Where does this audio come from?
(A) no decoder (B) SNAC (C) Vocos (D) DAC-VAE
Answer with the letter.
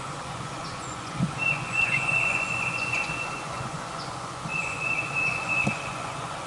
C